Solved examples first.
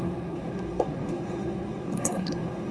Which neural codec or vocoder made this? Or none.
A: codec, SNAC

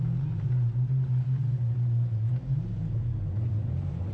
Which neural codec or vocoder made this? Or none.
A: none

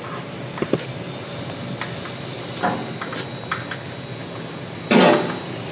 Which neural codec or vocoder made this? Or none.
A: none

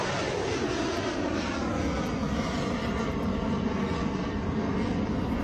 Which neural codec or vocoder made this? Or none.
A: none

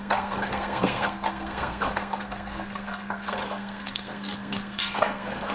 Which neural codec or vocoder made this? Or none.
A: codec, SNAC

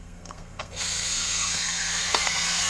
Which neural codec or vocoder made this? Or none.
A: codec, SNAC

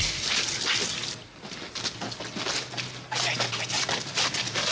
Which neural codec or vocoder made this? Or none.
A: none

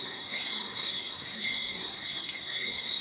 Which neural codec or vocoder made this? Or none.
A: codec, SNAC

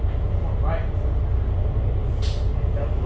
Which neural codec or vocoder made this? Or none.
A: none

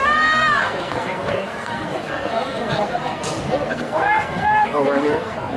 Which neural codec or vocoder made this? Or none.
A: codec, SNAC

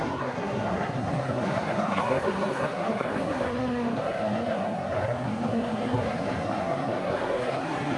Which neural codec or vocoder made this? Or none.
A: codec, SNAC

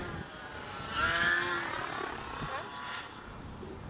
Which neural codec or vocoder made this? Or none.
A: none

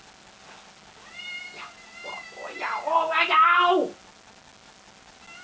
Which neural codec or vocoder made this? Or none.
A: none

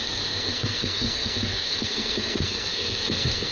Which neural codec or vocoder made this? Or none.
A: codec, SNAC